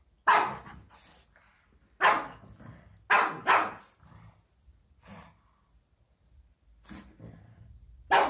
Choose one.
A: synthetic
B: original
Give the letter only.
B